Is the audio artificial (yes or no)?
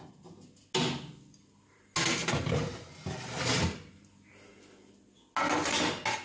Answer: no